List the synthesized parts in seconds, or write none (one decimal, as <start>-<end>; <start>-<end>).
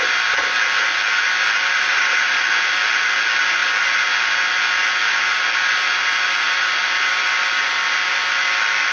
1.9-2.4